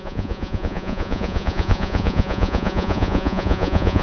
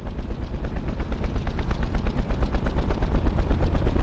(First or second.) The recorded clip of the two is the second